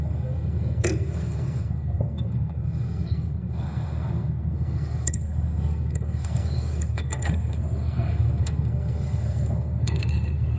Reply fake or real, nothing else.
fake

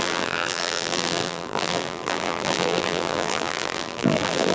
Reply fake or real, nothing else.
fake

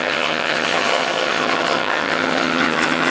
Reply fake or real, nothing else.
fake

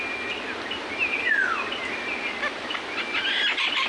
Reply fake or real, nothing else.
real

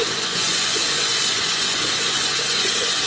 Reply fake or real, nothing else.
fake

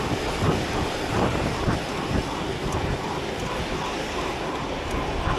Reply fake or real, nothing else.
real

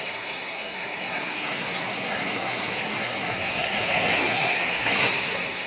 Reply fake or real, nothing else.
fake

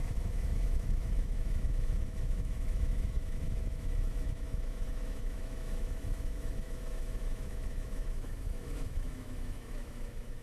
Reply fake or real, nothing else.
fake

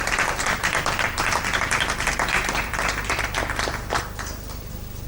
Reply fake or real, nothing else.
fake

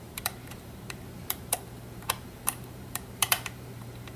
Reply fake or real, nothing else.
fake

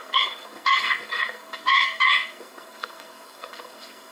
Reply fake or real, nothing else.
fake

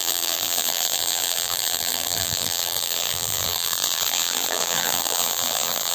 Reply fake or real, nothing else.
fake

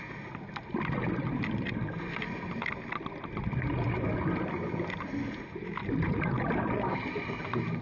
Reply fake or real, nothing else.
real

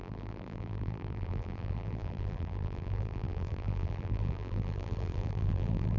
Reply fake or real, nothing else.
fake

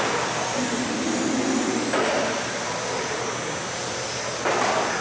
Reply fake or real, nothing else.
real